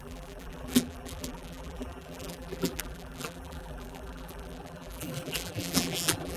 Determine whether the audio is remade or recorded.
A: remade